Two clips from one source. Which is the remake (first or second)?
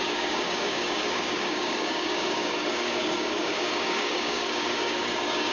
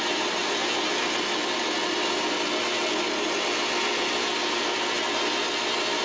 first